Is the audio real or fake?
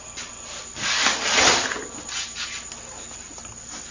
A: real